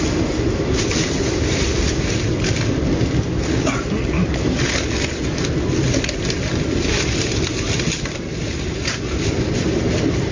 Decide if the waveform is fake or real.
fake